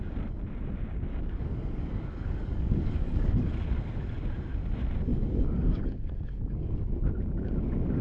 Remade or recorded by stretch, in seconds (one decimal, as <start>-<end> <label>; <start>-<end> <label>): 0.0-1.1 recorded; 1.1-3.5 remade; 3.5-5.1 recorded; 5.1-6.9 remade; 6.9-8.0 recorded